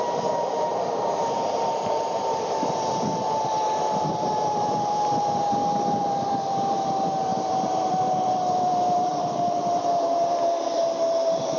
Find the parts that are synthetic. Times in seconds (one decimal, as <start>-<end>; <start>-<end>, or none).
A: 0.0-11.6